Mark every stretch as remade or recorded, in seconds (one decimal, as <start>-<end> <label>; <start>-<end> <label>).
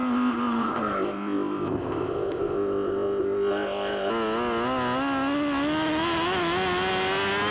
0.0-4.1 remade; 4.1-7.5 recorded